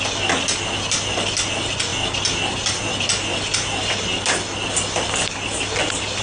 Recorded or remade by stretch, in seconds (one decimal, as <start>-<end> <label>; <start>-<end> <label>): 0.0-6.2 recorded